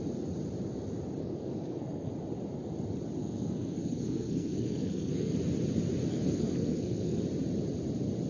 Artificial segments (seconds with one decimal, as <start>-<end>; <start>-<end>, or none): 1.2-2.1; 3.2-5.3; 6.1-7.2